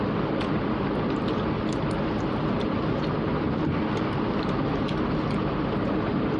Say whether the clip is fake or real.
real